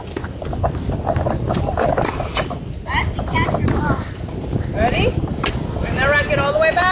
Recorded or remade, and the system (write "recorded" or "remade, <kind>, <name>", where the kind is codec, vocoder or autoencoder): recorded